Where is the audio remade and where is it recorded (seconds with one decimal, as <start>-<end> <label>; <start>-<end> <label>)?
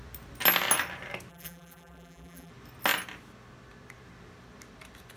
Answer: 0.0-1.3 recorded; 1.3-2.5 remade; 2.5-5.2 recorded